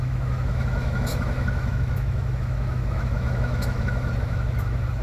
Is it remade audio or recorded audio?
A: remade